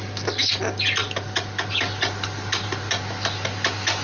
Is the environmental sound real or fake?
real